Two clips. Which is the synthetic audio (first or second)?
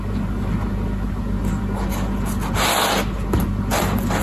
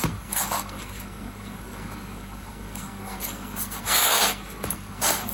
second